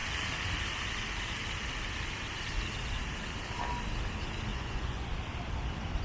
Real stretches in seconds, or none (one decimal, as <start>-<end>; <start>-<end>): 0.0-4.5; 5.1-6.0

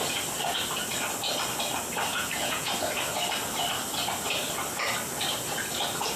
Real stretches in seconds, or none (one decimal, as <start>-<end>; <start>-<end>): 0.0-2.1; 2.7-6.2

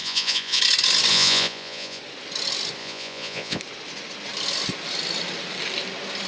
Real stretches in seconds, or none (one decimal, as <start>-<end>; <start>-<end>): 0.6-1.1; 2.0-2.8; 3.6-6.3

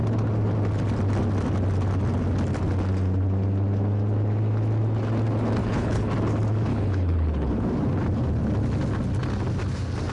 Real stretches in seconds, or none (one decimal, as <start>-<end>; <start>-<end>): 0.0-5.6; 6.1-6.7; 7.5-10.1

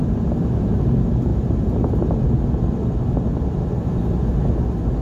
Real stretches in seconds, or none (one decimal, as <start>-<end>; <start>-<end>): 0.0-5.0

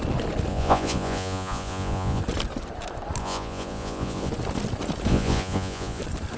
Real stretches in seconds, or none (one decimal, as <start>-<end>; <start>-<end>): 0.0-0.5; 2.2-3.2; 4.3-5.1; 6.0-6.4

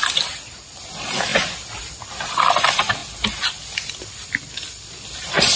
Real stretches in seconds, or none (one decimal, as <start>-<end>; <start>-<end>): 0.0-5.6

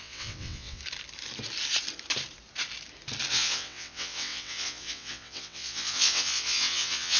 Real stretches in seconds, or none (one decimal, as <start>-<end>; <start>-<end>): 0.8-3.3